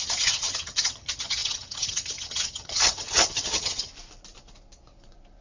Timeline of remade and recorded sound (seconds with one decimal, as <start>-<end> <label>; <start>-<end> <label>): 0.0-3.9 remade; 3.9-5.4 recorded